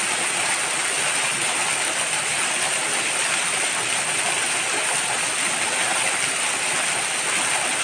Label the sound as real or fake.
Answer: real